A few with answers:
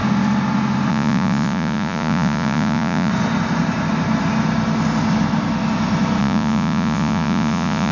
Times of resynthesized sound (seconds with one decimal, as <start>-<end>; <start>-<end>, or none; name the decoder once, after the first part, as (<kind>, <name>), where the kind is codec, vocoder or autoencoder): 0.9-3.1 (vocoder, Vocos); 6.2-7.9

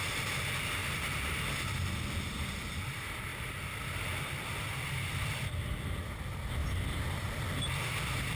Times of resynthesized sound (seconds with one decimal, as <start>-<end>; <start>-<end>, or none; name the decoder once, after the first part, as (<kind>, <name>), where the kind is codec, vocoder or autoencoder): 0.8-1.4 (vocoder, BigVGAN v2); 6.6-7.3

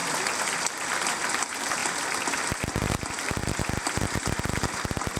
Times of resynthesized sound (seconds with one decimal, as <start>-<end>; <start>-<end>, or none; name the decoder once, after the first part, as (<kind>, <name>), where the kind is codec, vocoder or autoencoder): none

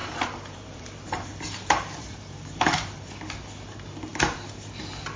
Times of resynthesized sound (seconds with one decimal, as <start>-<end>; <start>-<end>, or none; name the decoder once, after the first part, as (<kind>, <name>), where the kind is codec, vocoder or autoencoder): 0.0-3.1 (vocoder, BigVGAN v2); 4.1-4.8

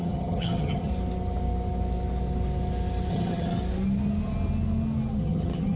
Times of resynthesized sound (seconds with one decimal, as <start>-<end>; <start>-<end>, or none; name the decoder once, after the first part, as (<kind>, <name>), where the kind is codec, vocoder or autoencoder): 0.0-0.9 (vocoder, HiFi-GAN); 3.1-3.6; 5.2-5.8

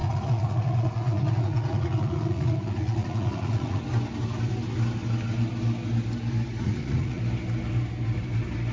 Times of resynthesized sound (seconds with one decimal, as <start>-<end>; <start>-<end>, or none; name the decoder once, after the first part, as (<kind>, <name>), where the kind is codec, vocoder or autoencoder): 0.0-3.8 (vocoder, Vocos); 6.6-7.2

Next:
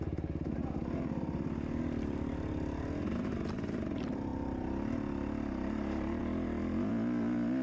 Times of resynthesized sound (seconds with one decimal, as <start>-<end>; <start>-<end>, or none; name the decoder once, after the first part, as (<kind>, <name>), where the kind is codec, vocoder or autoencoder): none

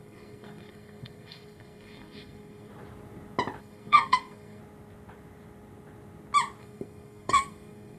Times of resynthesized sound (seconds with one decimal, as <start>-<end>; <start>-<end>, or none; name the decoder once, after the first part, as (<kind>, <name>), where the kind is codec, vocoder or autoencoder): 0.0-2.7 (codec, SNAC); 3.6-4.6; 6.6-8.0